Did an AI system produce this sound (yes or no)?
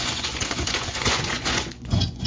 yes